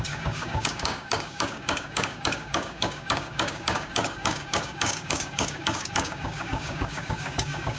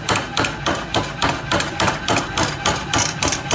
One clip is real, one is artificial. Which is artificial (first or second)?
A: first